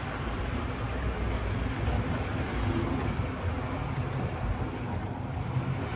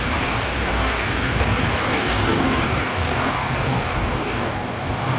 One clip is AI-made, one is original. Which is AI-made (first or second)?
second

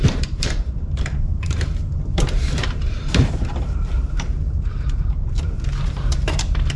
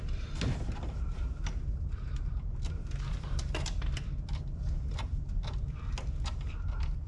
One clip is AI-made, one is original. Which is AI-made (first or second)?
first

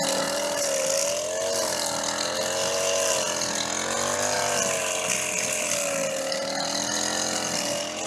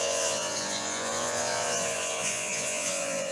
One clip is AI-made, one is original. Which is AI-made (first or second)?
second